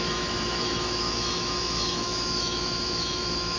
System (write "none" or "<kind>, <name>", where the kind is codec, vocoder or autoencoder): autoencoder, DAC-VAE